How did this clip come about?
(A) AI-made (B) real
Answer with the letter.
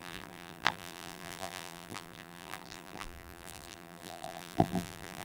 A